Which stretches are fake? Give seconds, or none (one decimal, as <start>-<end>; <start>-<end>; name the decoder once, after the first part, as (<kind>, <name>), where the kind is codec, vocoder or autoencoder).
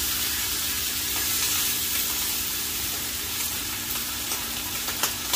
2.5-5.0 (vocoder, BigVGAN v2)